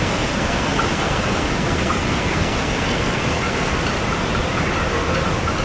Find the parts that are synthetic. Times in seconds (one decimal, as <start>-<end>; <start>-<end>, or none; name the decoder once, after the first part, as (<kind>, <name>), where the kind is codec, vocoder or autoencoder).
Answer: 0.0-3.7 (codec, SNAC)